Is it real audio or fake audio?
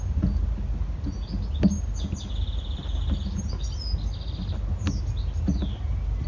real